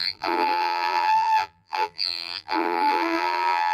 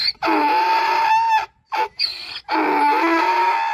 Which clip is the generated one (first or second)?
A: first